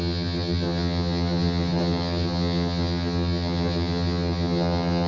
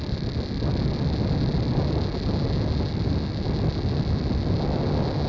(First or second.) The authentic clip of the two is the second